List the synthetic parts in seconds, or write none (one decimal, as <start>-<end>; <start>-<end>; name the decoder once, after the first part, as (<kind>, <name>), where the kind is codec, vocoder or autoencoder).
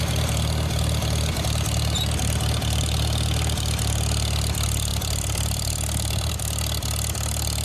4.9-6.3 (vocoder, BigVGAN v2)